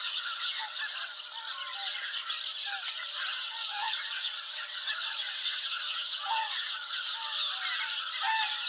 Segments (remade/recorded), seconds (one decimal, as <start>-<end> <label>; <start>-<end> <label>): 0.0-0.8 remade; 0.8-3.3 recorded; 3.3-7.0 remade; 7.0-8.7 recorded